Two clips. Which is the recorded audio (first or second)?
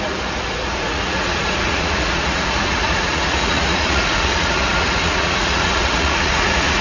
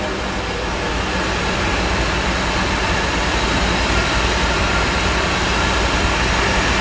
second